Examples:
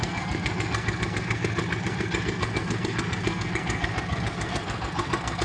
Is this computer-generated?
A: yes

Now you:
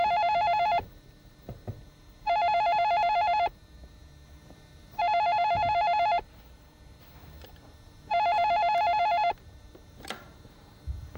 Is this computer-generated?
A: yes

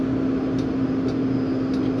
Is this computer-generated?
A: no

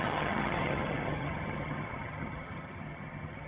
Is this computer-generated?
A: yes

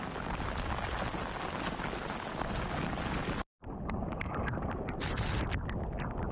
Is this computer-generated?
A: no